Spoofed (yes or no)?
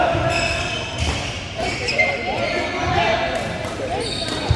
no